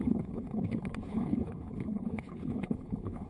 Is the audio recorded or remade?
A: remade